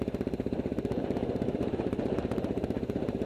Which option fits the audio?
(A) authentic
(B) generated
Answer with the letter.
B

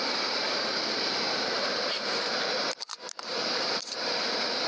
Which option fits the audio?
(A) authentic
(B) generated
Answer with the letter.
B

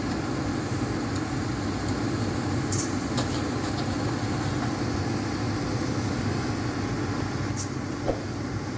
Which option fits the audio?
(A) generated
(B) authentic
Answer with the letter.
B